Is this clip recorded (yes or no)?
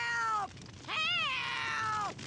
yes